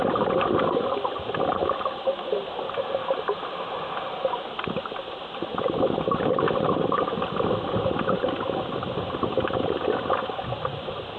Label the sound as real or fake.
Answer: real